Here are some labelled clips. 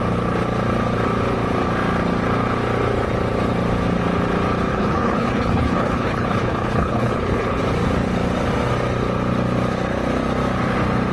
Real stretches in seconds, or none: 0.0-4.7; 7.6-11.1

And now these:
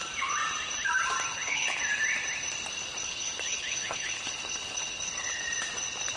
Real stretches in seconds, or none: 0.0-1.3; 1.8-3.0; 5.4-6.2

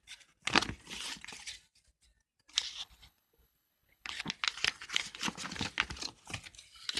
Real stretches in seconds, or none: 0.0-2.8; 4.3-7.0

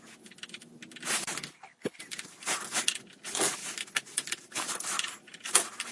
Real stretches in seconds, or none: 0.0-1.5; 2.0-5.9

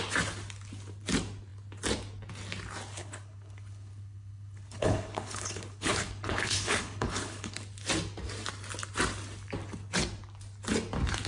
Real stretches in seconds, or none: 0.0-3.0; 7.6-11.3

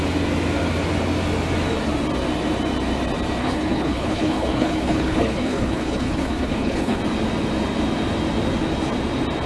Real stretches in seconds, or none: 0.0-3.4; 7.0-9.5

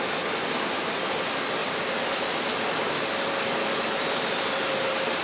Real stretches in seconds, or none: 0.0-5.2

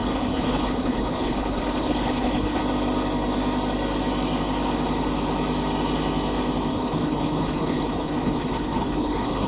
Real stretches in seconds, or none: 2.6-6.7